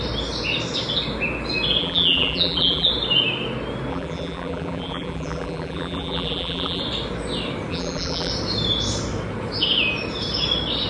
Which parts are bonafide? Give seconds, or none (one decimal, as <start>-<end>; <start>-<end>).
0.0-1.8; 2.9-3.9; 6.8-7.7; 8.3-10.9